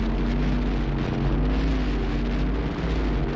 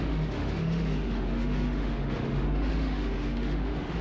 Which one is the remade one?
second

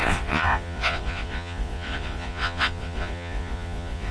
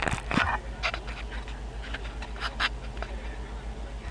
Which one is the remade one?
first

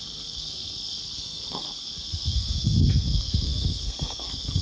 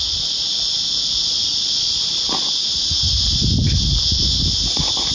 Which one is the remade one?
first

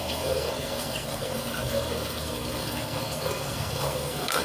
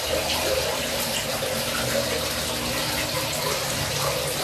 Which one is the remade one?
first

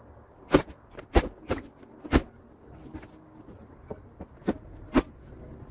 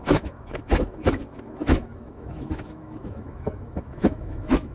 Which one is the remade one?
second